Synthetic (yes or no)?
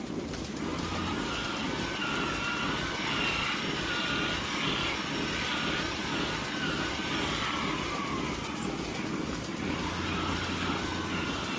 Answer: no